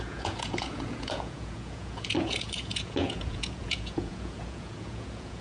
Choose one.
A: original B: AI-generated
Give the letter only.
B